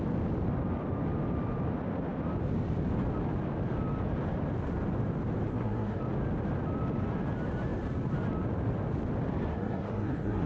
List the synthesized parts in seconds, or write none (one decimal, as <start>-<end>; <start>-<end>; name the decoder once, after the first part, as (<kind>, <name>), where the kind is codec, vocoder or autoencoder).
5.5-6.0 (codec, SNAC); 9.5-10.5